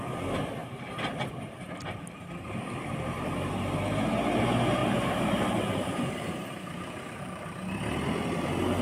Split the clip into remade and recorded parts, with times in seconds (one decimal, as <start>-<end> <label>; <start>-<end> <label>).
0.0-0.6 recorded; 0.6-3.6 remade; 3.6-4.8 recorded; 4.8-7.6 remade; 7.6-8.8 recorded